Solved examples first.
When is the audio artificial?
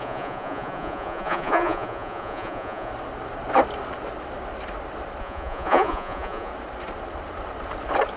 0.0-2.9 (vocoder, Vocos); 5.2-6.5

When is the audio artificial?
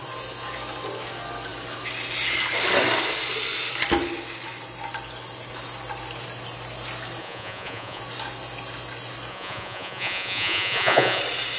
7.2-8.0 (vocoder, Vocos); 9.3-11.2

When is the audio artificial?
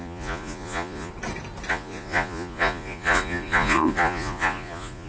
0.0-1.1 (vocoder, Vocos); 1.7-5.1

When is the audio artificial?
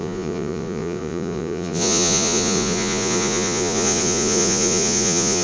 0.0-5.4 (vocoder, Vocos)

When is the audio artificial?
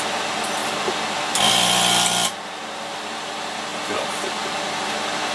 none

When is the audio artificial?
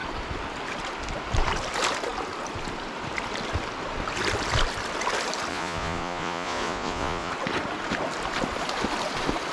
5.5-7.3 (vocoder, Vocos)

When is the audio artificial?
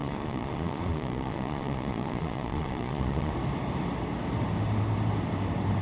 0.0-3.3 (vocoder, Vocos)